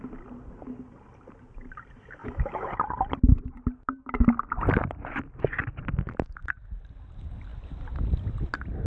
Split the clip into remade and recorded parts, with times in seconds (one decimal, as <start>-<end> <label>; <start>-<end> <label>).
0.0-2.2 recorded; 2.2-2.7 remade; 2.7-8.9 recorded